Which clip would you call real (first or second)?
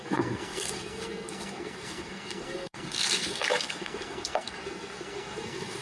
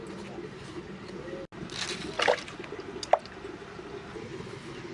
second